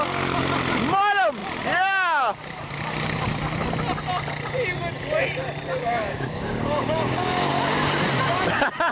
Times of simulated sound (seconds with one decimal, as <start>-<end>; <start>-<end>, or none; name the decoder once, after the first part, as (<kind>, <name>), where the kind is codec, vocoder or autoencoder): 5.8-7.5 (codec, DAC)